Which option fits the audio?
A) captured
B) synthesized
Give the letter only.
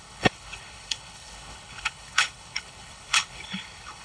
B